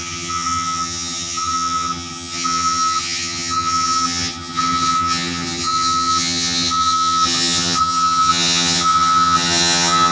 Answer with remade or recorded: remade